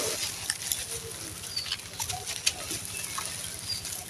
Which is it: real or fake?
real